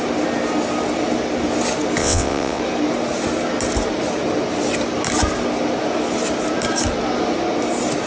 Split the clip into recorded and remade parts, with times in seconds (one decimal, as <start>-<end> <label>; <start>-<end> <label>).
0.0-2.0 recorded; 2.0-2.6 remade; 2.6-8.1 recorded